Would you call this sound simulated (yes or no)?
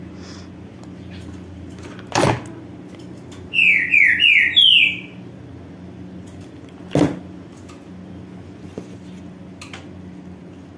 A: no